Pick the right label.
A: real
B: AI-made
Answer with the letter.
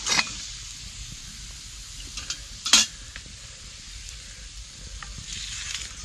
A